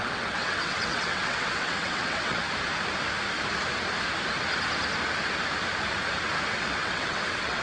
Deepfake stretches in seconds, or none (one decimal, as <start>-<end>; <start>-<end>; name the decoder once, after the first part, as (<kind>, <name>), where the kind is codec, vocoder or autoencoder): 0.0-2.4 (vocoder, WaveNeXt); 6.5-7.6